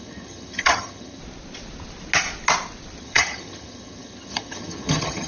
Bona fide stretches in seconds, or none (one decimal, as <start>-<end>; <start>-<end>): 1.2-3.0